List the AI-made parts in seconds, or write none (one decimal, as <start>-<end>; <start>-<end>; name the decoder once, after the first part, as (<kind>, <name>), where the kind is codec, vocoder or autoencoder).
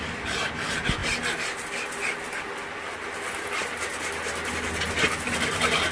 none